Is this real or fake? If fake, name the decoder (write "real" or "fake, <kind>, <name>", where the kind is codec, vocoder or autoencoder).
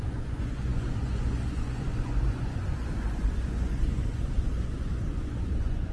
fake, vocoder, Vocos